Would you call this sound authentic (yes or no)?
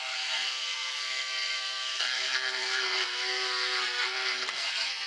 no